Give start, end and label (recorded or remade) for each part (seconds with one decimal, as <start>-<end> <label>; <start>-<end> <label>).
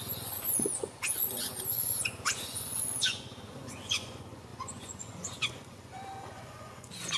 0.0-7.2 remade